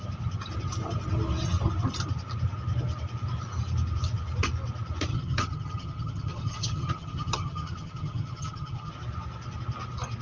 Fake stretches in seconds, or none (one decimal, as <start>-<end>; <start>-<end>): 5.1-8.9